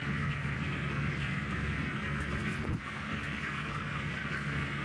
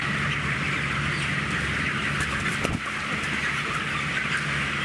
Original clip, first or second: second